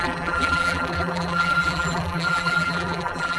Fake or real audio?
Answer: fake